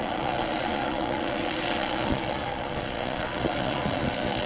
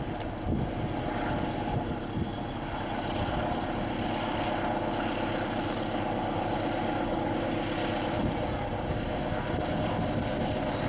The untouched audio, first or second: second